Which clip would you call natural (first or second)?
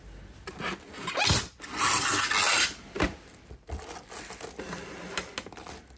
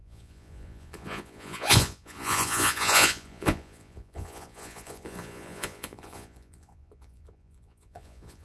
first